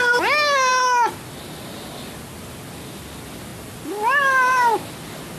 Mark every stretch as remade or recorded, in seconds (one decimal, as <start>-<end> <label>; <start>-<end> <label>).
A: 0.0-5.4 recorded